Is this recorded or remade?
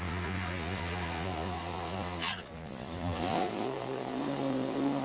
remade